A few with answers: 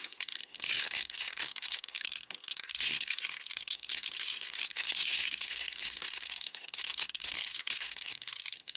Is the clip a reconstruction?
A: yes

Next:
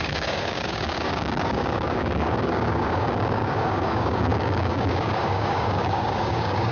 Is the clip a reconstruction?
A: yes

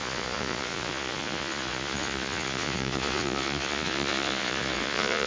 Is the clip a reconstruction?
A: yes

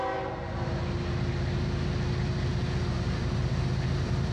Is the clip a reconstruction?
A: no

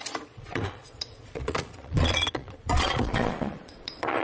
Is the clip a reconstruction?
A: yes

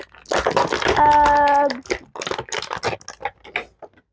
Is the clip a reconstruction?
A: no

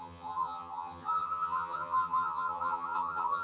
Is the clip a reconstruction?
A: yes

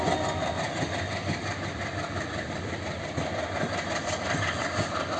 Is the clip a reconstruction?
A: no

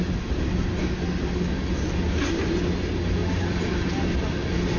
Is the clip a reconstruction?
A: no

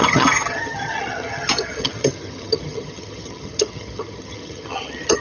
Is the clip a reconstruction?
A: yes